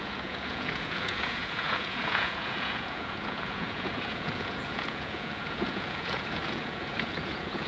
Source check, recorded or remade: remade